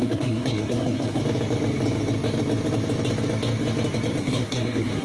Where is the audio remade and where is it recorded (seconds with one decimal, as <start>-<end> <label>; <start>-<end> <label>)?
0.0-1.2 remade; 1.2-4.2 recorded; 4.2-5.0 remade